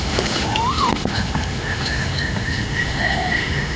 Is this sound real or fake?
fake